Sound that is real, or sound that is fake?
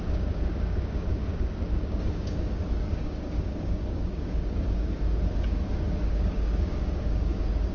fake